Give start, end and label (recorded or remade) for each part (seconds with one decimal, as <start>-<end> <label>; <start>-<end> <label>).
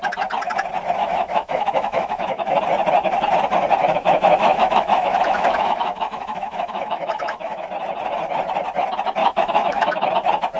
0.0-1.0 recorded; 1.0-2.6 remade; 2.6-3.8 recorded; 3.8-7.7 remade; 7.7-9.2 recorded; 9.2-10.1 remade; 10.1-10.6 recorded